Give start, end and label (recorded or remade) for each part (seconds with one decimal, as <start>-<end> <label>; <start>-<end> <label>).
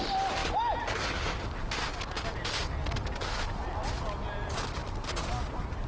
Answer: 0.0-5.9 recorded